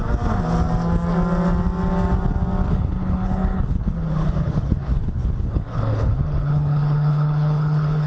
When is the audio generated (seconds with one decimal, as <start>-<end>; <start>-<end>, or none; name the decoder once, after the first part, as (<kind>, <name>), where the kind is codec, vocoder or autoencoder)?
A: 2.7-8.1 (codec, HILCodec)

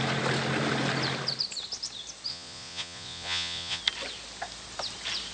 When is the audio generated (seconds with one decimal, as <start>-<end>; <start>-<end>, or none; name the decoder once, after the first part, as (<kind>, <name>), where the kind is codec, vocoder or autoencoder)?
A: 2.3-3.8 (vocoder, Vocos)

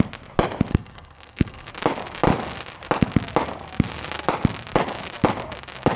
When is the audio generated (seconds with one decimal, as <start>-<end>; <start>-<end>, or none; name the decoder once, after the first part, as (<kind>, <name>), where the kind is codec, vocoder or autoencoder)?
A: 0.7-1.7 (codec, SNAC)

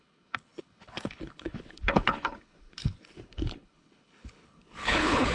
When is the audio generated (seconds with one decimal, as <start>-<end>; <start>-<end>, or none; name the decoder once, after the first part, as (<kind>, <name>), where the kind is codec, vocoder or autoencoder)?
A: 0.0-5.3 (codec, HILCodec)

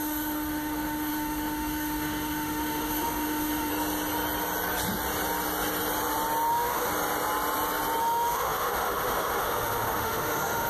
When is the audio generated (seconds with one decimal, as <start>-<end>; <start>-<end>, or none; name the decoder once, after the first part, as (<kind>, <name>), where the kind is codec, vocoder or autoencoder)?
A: 0.0-3.7 (autoencoder, DAC-VAE); 6.5-6.9; 8.0-10.7

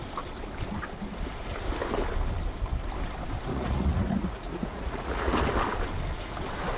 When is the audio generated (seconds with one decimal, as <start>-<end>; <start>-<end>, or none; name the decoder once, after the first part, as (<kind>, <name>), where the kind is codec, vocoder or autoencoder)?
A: 3.5-5.4 (vocoder, Vocos)

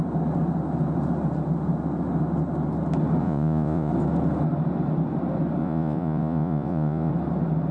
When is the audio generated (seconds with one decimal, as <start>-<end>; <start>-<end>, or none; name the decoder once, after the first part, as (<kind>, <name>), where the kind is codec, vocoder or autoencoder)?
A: 3.2-3.9 (vocoder, Vocos); 5.6-7.1

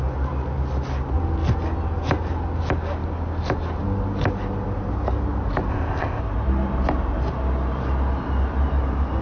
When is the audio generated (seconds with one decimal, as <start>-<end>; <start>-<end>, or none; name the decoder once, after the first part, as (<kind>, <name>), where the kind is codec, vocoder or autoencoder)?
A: 5.7-6.2 (codec, ZipCodec)